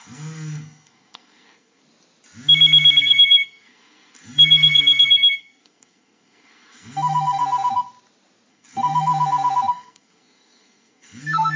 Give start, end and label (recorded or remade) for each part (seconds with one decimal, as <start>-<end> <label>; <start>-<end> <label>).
0.0-1.8 remade; 1.8-3.0 recorded; 3.0-7.4 remade; 7.4-8.5 recorded; 8.5-9.1 remade; 9.1-9.7 recorded; 9.7-11.6 remade